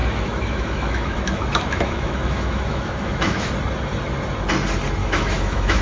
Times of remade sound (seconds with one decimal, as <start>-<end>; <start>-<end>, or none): 0.0-3.5; 5.0-5.8